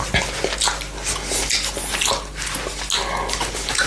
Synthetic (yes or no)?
no